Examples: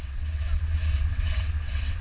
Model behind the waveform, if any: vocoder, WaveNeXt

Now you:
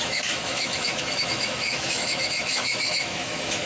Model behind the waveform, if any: autoencoder, DAC-VAE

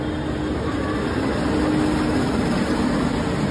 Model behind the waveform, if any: none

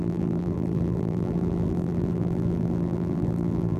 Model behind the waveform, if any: vocoder, BigVGAN v2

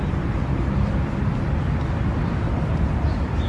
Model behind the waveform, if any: vocoder, BigVGAN v2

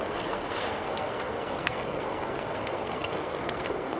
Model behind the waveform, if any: codec, SNAC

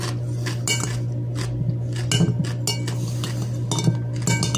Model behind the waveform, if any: none